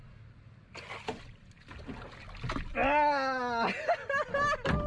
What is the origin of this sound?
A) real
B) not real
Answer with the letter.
A